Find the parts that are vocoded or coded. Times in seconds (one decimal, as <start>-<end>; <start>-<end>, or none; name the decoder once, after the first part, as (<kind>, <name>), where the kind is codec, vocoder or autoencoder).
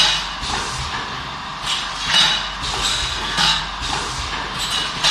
2.9-3.6 (codec, SNAC)